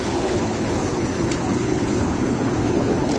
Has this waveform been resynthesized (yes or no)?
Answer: yes